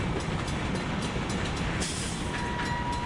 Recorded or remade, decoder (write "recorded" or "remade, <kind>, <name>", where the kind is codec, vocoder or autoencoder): recorded